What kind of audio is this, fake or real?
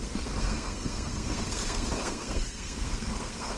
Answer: fake